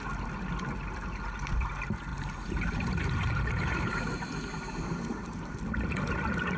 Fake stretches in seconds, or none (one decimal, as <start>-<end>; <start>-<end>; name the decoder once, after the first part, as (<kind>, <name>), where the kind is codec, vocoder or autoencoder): 2.1-5.6 (vocoder, BigVGAN v2)